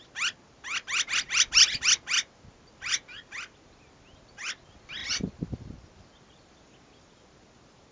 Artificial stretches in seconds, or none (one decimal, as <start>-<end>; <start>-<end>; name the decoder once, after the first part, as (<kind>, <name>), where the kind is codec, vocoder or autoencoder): none